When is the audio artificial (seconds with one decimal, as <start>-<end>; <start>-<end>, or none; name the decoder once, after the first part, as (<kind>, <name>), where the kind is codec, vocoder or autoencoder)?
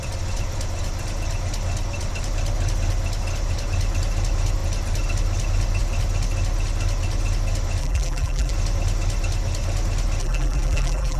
7.8-8.5 (vocoder, BigVGAN v2); 10.2-11.2